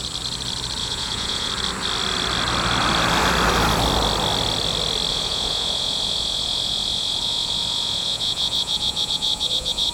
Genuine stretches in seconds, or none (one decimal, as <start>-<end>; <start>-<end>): 0.0-0.8; 1.5-5.1